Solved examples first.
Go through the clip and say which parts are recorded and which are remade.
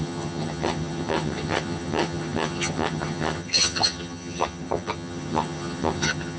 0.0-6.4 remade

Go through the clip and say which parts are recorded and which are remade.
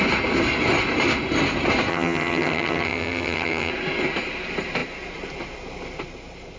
0.0-1.9 recorded; 1.9-3.7 remade; 3.7-6.6 recorded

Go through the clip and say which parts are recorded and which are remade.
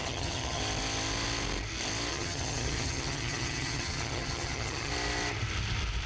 0.0-0.6 remade; 0.6-2.1 recorded; 2.1-4.9 remade; 4.9-6.1 recorded